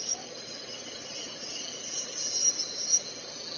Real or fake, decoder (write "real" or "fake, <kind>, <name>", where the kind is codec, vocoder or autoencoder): real